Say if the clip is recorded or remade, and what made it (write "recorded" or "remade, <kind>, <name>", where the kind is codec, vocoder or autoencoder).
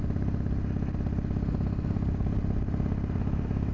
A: recorded